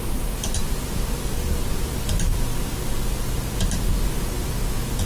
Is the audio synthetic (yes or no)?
no